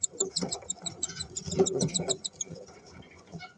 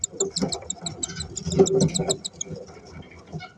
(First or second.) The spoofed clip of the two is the first